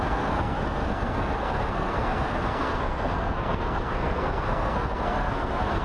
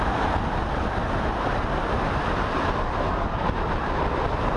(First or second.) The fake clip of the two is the first